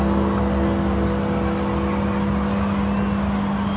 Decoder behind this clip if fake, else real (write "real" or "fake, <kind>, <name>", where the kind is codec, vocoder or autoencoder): real